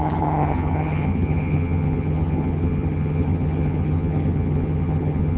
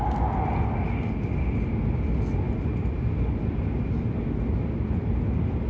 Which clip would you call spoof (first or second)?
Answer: first